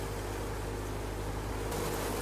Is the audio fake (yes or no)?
no